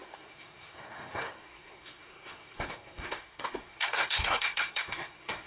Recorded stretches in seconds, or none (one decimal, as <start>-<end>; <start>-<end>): none